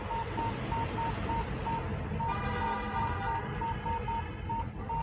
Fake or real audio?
real